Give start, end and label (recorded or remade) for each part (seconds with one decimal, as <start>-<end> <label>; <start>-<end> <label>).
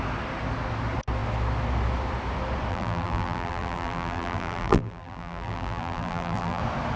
0.0-2.7 recorded; 2.7-6.6 remade; 6.6-7.0 recorded